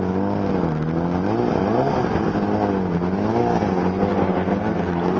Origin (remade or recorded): recorded